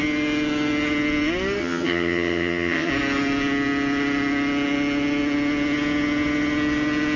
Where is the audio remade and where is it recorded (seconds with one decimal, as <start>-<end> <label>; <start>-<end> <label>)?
0.0-1.6 recorded; 1.6-2.9 remade; 2.9-7.2 recorded